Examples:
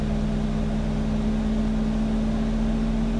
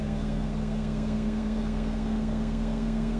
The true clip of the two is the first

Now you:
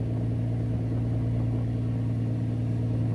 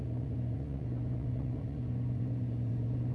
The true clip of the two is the first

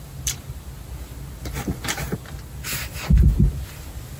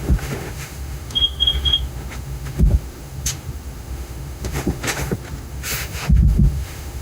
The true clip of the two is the first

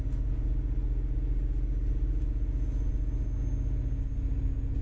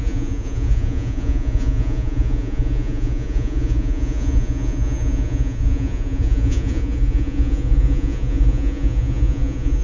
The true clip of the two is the first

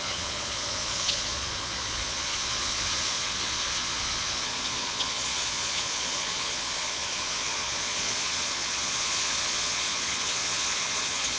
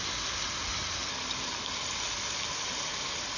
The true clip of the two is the second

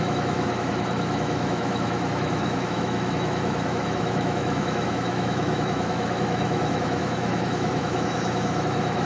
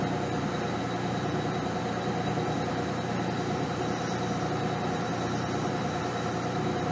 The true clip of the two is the second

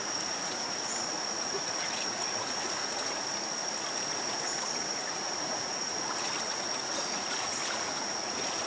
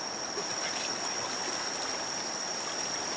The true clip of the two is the second